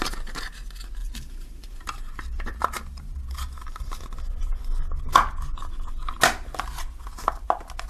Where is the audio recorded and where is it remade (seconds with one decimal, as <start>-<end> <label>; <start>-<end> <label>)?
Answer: 0.0-1.0 recorded; 1.0-4.0 remade; 4.0-7.9 recorded